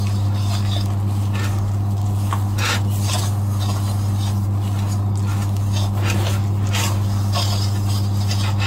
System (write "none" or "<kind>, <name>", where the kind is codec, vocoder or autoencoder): none